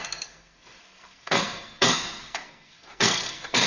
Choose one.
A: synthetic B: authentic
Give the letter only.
A